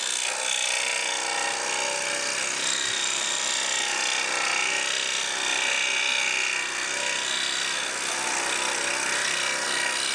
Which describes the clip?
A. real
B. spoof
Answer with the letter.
A